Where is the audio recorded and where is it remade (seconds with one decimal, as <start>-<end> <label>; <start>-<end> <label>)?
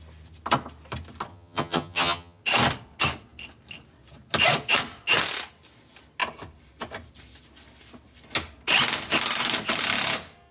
0.0-1.3 recorded; 1.3-2.4 remade; 2.4-10.5 recorded